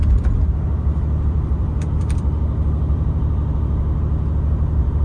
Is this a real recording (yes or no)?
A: no